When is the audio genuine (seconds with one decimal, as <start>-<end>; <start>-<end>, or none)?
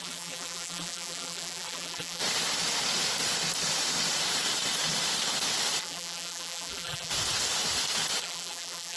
2.2-5.8; 7.1-8.2